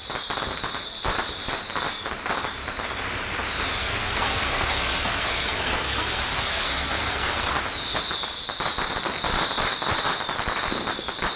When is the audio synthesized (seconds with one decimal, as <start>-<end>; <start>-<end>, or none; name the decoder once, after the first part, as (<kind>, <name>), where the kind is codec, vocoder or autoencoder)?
3.8-7.6 (codec, SNAC)